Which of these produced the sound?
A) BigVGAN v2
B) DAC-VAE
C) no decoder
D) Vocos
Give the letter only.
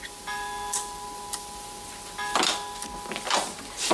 C